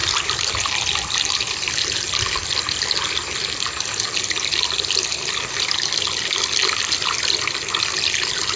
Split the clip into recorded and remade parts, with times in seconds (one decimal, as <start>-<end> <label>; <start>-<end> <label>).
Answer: 0.0-8.6 recorded